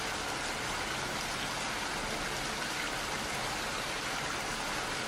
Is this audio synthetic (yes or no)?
no